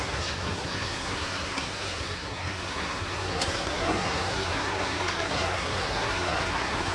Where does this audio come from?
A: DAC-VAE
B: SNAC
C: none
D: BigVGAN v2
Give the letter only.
B